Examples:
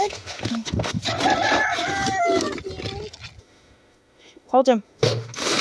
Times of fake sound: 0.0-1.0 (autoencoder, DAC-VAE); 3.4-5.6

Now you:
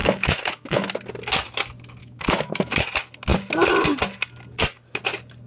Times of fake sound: 0.0-0.9 (autoencoder, DAC-VAE); 2.0-2.7

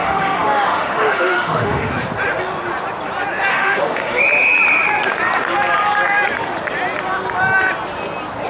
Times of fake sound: 0.0-1.9 (autoencoder, DAC-VAE); 3.5-4.2

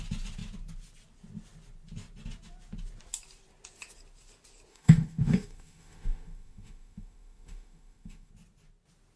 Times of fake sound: 4.7-8.3 (autoencoder, DAC-VAE)

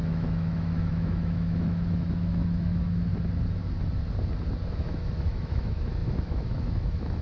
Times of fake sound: 0.0-3.1 (autoencoder, DAC-VAE); 4.7-7.2

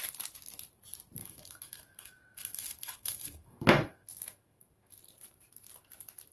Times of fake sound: 1.2-5.0 (autoencoder, DAC-VAE)